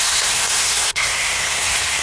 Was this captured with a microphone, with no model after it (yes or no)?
no